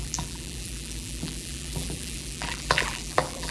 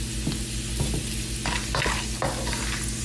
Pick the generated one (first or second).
first